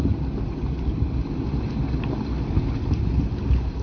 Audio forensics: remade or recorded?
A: recorded